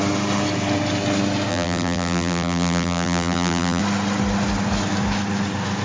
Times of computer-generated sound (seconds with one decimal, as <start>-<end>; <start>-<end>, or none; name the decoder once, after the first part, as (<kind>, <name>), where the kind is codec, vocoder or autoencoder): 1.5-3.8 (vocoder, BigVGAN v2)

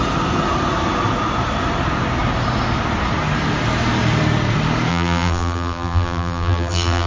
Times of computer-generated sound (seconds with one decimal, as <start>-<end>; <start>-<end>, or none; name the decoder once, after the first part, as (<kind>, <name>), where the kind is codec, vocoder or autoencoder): 4.9-7.1 (vocoder, BigVGAN v2)

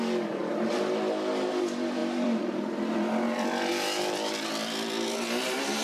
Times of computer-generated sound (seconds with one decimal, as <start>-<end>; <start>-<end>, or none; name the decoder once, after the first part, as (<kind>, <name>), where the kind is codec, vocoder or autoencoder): 0.0-0.4 (vocoder, BigVGAN v2); 1.5-5.8

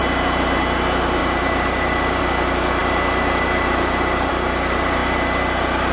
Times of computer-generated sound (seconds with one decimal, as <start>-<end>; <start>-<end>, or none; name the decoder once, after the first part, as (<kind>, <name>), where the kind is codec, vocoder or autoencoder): 1.2-2.2 (vocoder, BigVGAN v2); 2.8-4.3

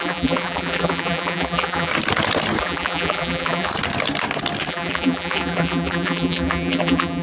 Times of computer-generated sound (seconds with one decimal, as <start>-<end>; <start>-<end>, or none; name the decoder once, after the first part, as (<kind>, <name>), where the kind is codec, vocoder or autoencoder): 0.0-1.9 (vocoder, BigVGAN v2); 2.6-3.7; 4.7-7.2

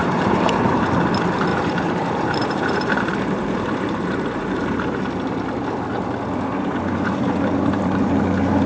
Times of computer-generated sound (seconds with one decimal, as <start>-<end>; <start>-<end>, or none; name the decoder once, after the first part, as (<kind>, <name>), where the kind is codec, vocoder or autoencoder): 0.0-0.8 (vocoder, BigVGAN v2); 1.5-5.1; 6.5-8.2